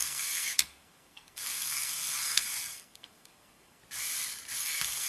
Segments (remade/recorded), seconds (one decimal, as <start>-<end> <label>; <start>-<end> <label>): 0.0-3.8 remade; 3.8-4.6 recorded; 4.6-5.1 remade